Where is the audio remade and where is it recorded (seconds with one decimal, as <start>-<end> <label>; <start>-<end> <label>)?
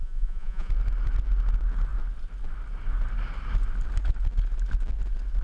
0.0-0.7 remade; 0.7-5.4 recorded